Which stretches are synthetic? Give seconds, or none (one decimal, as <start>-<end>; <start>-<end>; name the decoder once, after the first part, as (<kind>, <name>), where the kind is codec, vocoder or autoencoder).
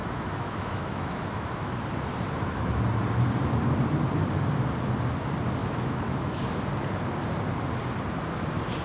0.0-1.7 (autoencoder, DAC-VAE); 5.6-6.4